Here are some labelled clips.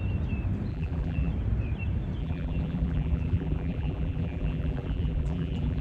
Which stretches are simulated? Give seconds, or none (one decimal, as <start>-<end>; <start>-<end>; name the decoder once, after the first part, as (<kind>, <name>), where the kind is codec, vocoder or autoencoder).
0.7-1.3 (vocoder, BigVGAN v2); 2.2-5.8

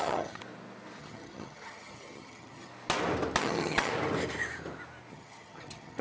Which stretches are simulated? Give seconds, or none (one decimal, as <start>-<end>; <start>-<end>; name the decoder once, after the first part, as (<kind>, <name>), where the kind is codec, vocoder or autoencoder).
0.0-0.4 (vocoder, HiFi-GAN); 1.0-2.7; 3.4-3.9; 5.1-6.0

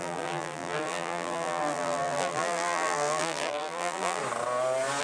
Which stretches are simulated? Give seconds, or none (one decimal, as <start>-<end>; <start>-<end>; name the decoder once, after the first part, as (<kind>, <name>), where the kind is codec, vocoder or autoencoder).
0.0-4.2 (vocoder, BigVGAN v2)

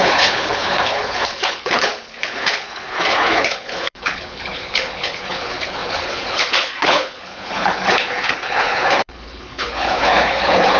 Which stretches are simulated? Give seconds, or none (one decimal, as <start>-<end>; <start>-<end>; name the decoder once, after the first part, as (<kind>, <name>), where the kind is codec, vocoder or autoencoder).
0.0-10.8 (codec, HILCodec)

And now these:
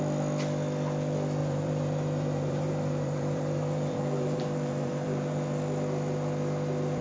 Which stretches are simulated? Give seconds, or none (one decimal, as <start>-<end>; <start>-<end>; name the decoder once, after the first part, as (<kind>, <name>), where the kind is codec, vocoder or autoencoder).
1.4-5.6 (vocoder, BigVGAN v2)

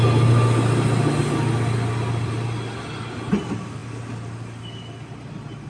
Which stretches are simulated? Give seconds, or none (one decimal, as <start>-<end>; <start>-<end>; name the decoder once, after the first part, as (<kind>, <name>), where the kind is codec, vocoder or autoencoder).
none

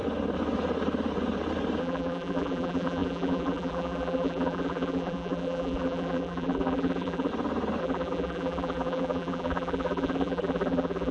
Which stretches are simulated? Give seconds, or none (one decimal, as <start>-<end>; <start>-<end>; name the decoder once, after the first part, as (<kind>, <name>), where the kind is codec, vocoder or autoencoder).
1.8-7.3 (vocoder, BigVGAN v2); 7.8-11.1